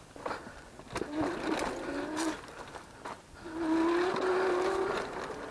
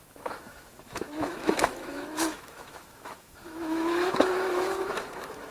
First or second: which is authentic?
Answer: first